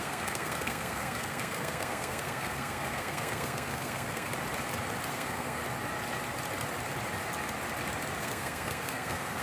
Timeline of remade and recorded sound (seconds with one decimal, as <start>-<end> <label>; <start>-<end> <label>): 0.0-4.3 remade; 4.3-5.1 recorded; 5.1-5.6 remade; 5.6-8.2 recorded; 8.2-9.4 remade